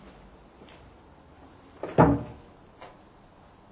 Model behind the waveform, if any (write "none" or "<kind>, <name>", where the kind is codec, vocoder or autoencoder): none